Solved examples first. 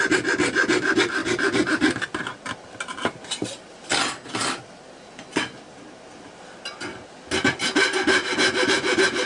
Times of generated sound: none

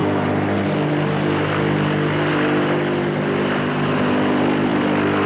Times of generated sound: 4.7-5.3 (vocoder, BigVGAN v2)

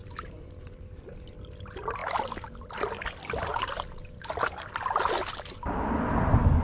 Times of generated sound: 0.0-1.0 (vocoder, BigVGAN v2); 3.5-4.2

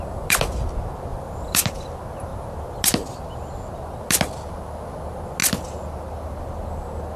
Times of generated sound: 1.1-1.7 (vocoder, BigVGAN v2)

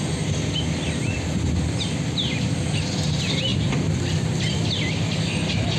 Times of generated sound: none

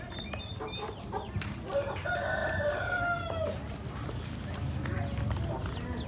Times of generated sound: 2.4-5.2 (vocoder, BigVGAN v2)

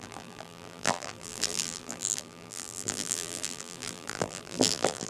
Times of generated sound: 0.0-5.1 (vocoder, BigVGAN v2)

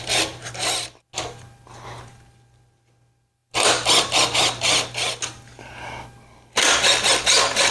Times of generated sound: none